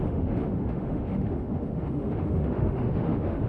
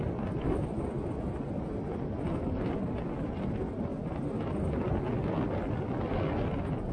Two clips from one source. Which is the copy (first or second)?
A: first